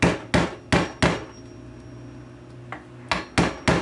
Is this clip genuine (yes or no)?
yes